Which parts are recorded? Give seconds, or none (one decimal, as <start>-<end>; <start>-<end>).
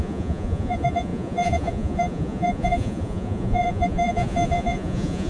none